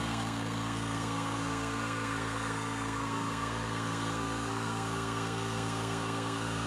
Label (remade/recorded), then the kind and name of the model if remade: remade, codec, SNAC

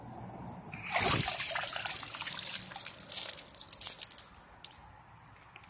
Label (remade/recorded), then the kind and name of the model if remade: recorded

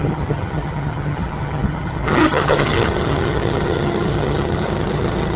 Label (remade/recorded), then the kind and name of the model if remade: remade, vocoder, HiFi-GAN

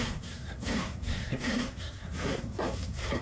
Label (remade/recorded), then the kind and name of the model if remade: remade, codec, SNAC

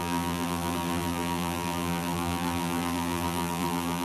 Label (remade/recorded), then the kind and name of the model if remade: remade, vocoder, BigVGAN v2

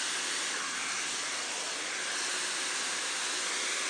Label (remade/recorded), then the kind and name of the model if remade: recorded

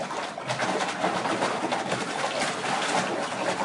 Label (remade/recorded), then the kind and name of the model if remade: recorded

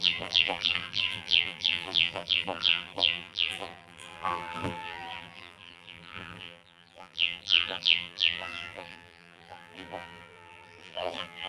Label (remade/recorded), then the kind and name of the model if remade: remade, vocoder, BigVGAN v2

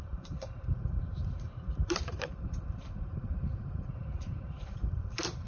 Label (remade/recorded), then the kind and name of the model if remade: remade, vocoder, BigVGAN v2